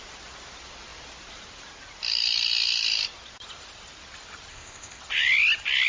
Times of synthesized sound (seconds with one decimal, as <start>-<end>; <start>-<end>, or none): 4.5-5.0